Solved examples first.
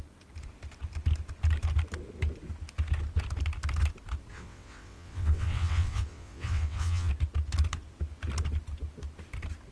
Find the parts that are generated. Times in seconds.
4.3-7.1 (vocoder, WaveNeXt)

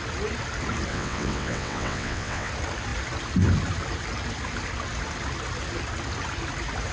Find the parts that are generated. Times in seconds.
0.9-2.5 (vocoder, WaveNeXt)

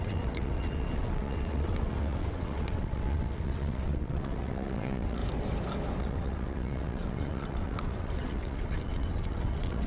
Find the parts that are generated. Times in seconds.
0.0-5.2 (vocoder, WaveNeXt); 6.0-9.9

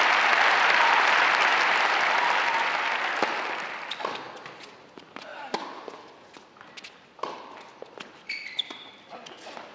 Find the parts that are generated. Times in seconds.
none

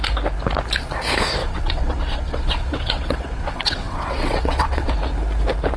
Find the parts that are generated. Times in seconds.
1.4-4.9 (vocoder, WaveNeXt)

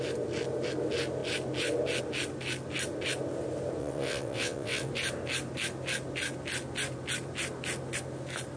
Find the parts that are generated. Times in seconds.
3.8-4.9 (vocoder, WaveNeXt)

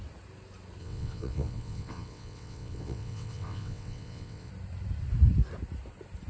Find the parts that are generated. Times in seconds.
0.8-4.5 (vocoder, WaveNeXt)